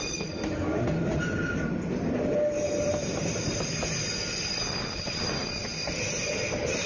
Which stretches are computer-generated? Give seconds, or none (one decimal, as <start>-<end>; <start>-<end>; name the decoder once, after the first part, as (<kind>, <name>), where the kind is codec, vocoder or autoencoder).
none